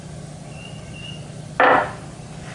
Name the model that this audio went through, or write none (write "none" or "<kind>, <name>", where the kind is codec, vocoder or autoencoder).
none